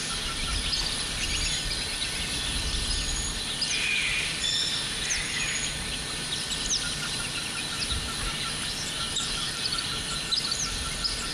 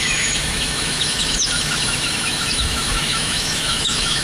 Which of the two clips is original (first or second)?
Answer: first